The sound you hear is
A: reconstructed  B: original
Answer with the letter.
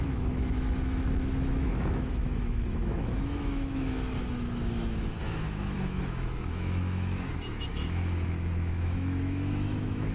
A